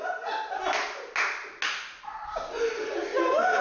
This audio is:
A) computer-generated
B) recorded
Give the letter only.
B